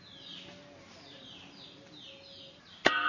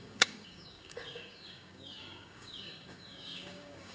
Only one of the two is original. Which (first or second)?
first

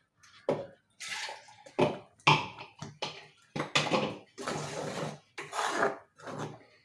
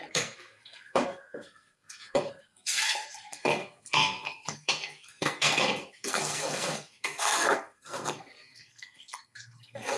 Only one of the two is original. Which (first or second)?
first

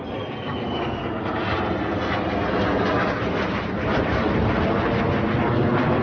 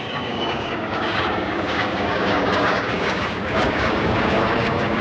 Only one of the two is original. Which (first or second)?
first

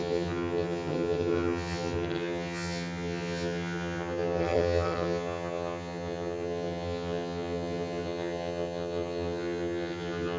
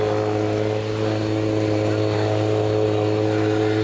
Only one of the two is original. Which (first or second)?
second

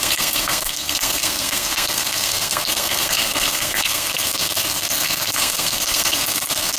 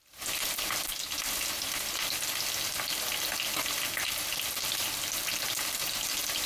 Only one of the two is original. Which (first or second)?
second